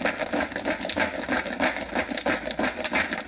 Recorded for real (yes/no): yes